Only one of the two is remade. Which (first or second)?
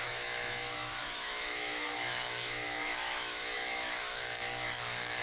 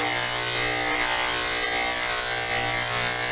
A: first